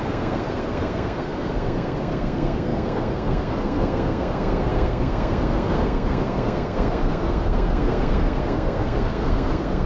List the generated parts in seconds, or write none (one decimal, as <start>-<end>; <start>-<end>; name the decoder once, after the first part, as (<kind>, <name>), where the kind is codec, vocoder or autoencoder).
0.0-9.9 (codec, SNAC)